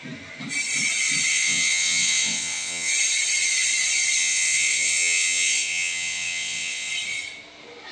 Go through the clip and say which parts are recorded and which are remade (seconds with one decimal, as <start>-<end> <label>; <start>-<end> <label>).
0.0-1.3 recorded; 1.3-2.9 remade; 2.9-4.2 recorded; 4.2-6.9 remade; 6.9-7.9 recorded